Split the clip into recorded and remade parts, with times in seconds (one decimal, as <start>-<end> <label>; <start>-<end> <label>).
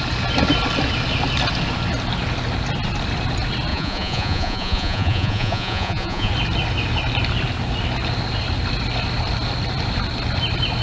0.0-3.7 recorded; 3.7-6.3 remade; 6.3-10.8 recorded